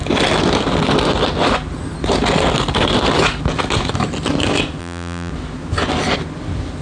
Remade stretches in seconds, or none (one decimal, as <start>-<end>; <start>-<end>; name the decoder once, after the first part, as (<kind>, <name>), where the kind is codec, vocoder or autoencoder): 4.8-5.3 (vocoder, BigVGAN v2)